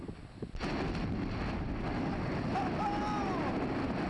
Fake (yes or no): no